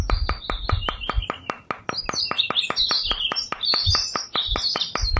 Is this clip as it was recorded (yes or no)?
yes